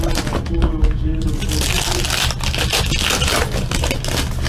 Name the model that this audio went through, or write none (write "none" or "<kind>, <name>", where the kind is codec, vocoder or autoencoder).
none